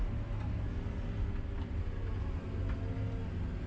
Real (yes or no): yes